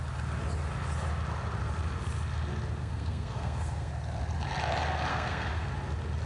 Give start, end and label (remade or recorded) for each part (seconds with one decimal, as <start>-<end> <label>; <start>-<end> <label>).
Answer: 0.0-2.8 recorded; 2.8-3.9 remade; 3.9-5.1 recorded; 5.1-5.7 remade; 5.7-6.3 recorded